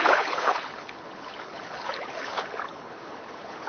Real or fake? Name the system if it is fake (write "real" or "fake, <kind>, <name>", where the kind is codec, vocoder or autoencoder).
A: fake, codec, HILCodec